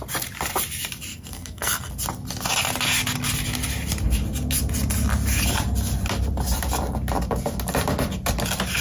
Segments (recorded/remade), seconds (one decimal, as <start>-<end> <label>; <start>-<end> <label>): 0.0-1.1 recorded; 1.1-1.9 remade; 1.9-8.8 recorded